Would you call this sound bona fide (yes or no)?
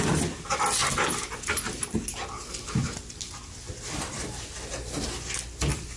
yes